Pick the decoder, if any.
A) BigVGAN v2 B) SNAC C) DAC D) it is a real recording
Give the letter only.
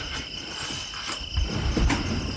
D